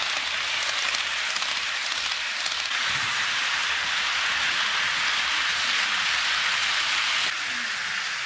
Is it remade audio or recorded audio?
recorded